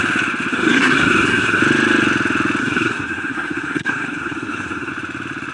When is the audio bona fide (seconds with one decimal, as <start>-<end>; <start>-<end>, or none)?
0.0-0.5; 1.6-2.6; 4.9-5.5